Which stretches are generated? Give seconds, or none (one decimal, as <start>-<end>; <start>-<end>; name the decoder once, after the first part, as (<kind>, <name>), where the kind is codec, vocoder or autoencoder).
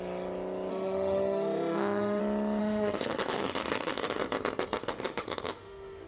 0.7-2.2 (autoencoder, DAC-VAE); 2.6-4.2; 4.8-6.1